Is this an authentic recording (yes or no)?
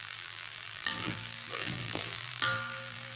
no